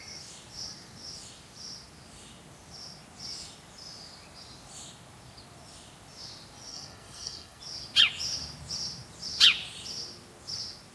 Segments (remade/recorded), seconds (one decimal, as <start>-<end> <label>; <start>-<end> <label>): 0.0-6.7 recorded; 6.7-7.6 remade; 7.6-10.9 recorded